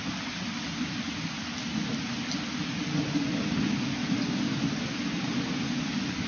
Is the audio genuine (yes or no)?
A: yes